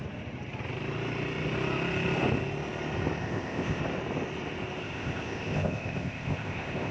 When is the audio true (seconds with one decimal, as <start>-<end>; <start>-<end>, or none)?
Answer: 0.0-3.2; 3.8-4.8